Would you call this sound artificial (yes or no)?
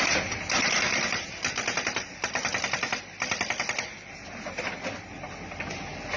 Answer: no